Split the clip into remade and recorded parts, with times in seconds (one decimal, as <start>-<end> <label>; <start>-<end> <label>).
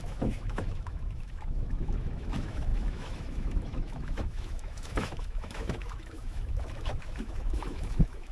0.0-8.3 remade